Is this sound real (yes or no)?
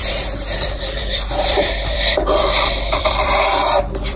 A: no